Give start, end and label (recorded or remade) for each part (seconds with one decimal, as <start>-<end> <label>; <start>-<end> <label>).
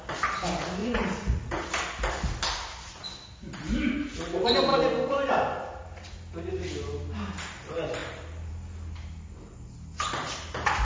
0.0-0.8 recorded; 0.8-1.5 remade; 1.5-10.8 recorded